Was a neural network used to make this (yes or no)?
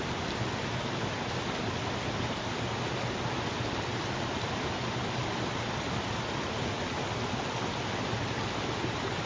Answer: no